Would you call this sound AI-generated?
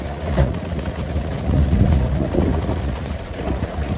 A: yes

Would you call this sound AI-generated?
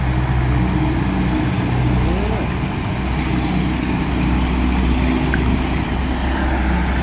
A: no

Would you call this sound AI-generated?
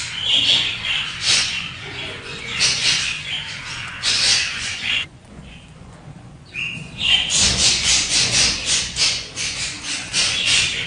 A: yes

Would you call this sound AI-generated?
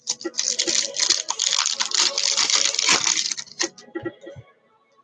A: no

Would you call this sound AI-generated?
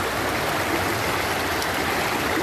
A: no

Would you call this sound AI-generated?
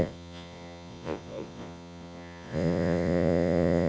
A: yes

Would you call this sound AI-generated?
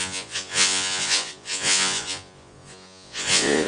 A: yes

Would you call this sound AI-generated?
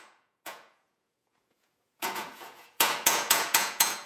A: yes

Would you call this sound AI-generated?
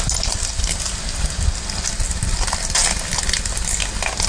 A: no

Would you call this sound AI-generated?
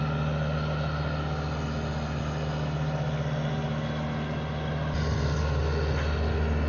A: no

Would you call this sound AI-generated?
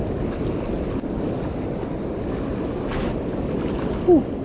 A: no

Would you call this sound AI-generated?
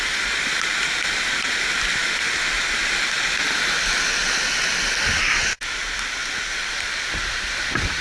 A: no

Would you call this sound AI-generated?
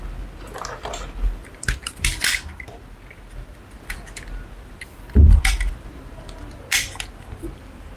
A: no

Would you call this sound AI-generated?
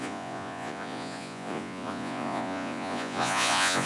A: yes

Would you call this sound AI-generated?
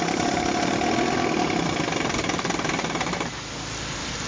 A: no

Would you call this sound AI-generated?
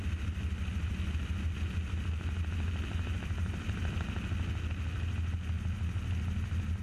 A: no